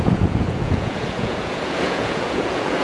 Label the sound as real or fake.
fake